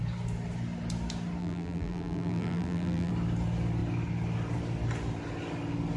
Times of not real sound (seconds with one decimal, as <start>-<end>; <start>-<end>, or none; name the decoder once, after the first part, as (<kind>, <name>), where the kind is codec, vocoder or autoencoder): 1.4-3.1 (vocoder, BigVGAN v2)